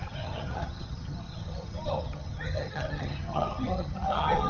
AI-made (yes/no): yes